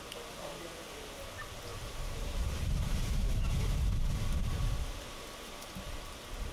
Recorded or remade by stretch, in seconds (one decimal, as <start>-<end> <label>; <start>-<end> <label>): 0.0-1.7 recorded; 1.7-4.6 remade; 4.6-6.5 recorded